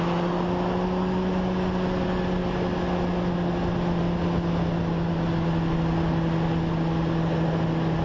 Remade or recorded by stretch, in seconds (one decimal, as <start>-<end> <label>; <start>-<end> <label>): 0.0-8.0 recorded